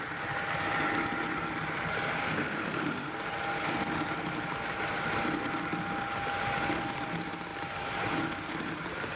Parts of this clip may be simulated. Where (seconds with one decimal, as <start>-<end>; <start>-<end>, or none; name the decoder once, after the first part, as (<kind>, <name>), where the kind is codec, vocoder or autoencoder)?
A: 2.2-3.1 (autoencoder, DAC-VAE)

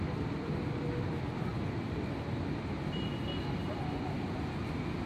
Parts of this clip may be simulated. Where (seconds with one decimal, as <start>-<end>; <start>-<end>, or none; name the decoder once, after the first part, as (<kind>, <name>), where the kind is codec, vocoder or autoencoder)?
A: none

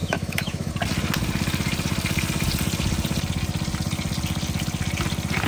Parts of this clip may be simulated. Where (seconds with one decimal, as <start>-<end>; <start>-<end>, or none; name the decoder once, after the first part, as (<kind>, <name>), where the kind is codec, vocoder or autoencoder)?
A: 0.0-0.7 (autoencoder, DAC-VAE)

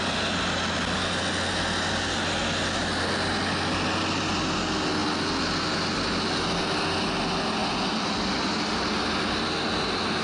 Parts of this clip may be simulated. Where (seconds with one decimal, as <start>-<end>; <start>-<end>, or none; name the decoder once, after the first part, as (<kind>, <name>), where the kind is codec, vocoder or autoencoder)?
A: none

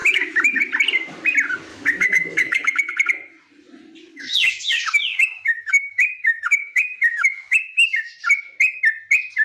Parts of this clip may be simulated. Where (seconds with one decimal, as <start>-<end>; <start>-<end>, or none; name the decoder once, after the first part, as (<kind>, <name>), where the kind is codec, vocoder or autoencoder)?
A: 0.0-0.6 (autoencoder, DAC-VAE); 1.7-2.9; 4.1-8.1